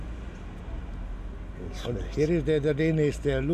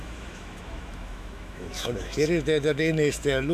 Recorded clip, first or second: first